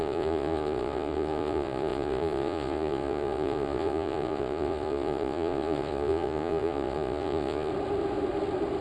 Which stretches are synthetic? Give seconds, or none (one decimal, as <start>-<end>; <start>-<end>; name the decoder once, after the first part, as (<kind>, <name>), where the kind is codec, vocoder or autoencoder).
0.0-7.7 (vocoder, Vocos)